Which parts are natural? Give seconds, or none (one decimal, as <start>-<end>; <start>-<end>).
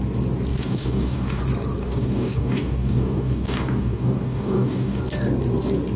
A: 0.0-0.5; 1.4-1.8; 5.0-6.0